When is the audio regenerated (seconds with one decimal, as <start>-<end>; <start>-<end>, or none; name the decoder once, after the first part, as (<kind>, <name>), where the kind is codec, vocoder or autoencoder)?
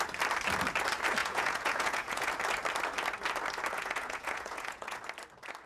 1.2-2.3 (vocoder, Vocos); 3.7-5.0